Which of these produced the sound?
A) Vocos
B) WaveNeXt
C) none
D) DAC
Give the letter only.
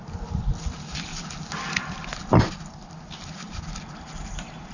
C